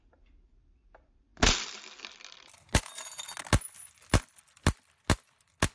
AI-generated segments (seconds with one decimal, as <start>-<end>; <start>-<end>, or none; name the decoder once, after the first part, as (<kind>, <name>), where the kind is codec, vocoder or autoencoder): none